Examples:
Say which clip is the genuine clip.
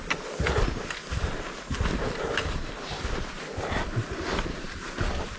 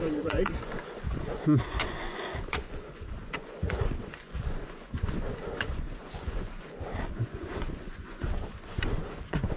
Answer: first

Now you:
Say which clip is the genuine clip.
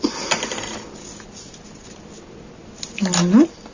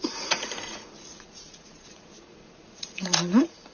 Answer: first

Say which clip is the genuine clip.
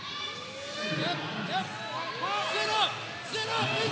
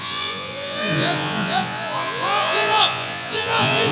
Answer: first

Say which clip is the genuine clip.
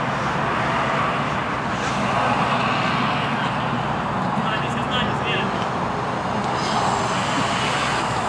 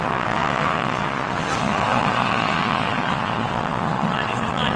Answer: first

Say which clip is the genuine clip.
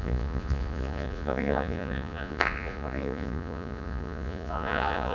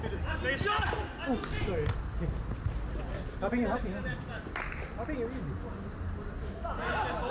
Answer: second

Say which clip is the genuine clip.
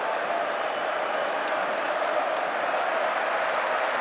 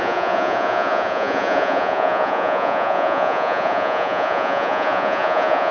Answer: first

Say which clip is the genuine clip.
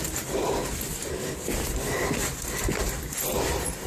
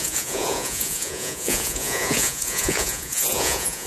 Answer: first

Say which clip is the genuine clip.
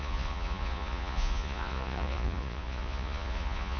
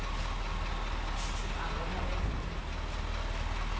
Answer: second